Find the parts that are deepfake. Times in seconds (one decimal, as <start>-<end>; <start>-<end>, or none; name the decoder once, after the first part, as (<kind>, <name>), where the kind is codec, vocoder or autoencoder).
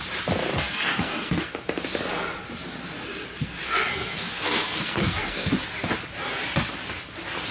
0.5-1.5 (codec, SNAC); 3.4-5.5